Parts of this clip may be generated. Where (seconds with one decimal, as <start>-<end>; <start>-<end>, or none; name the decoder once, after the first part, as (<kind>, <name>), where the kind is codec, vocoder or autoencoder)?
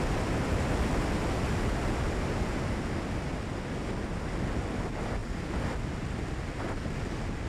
none